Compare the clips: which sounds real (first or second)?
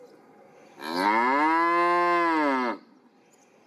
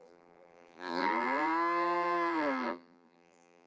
first